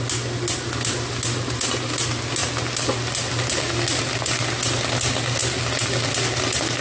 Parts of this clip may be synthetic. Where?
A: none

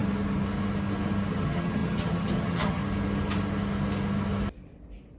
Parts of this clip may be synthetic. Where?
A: 1.3-2.8 (vocoder, HiFi-GAN)